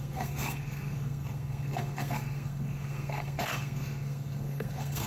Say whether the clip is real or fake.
fake